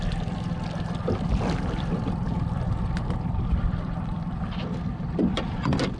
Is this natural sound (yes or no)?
yes